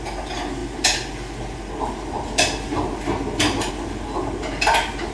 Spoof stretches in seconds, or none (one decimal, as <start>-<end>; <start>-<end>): none